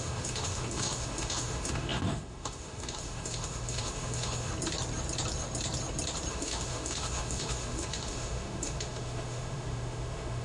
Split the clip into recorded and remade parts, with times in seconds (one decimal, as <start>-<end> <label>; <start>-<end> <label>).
0.0-4.5 remade; 4.5-6.3 recorded; 6.3-10.4 remade